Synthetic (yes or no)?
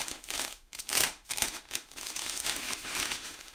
yes